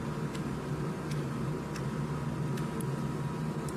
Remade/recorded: recorded